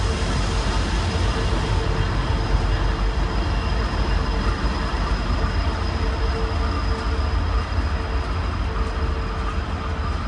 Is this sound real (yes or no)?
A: yes